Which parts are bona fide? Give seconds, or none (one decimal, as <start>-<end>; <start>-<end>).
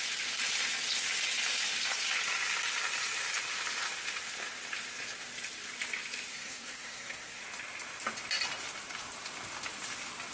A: 0.0-6.3; 7.4-10.3